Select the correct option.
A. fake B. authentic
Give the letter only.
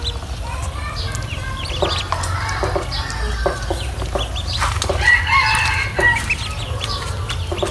B